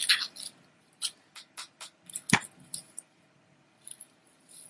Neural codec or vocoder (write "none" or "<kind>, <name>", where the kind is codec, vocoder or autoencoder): none